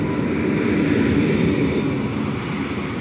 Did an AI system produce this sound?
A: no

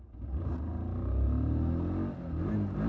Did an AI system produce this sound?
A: no